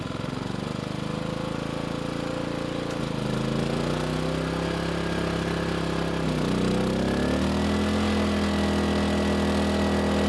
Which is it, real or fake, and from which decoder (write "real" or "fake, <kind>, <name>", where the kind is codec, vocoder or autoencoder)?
real